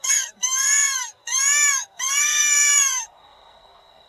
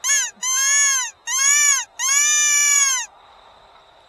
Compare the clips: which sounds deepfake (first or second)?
first